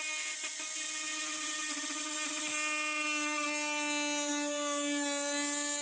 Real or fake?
real